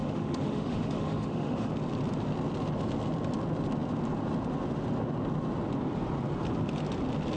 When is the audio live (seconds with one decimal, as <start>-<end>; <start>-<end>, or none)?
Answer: 1.7-7.4